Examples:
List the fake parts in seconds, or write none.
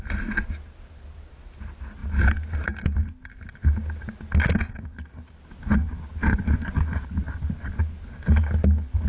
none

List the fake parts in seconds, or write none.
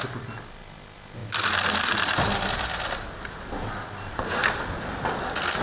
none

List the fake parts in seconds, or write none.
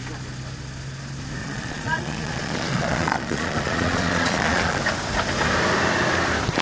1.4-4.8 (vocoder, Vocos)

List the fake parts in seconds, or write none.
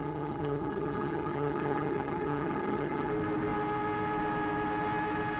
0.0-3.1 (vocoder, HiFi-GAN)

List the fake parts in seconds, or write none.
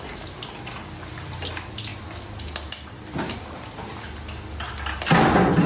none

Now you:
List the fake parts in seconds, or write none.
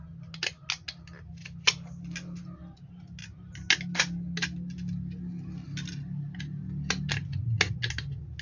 none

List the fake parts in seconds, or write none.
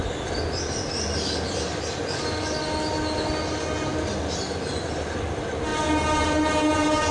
none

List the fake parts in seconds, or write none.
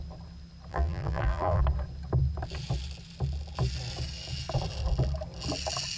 0.7-1.6 (vocoder, BigVGAN v2)